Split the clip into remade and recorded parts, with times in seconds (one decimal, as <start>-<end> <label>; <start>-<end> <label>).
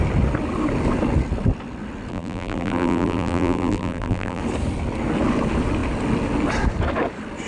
0.0-2.1 recorded; 2.1-4.4 remade; 4.4-7.5 recorded